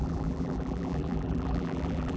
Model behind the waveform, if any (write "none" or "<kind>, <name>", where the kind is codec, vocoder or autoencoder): vocoder, BigVGAN v2